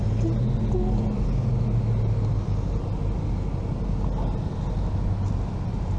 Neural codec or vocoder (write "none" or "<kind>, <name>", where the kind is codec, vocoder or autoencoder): none